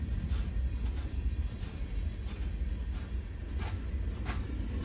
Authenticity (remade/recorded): recorded